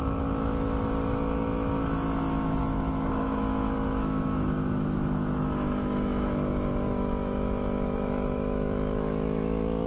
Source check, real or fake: fake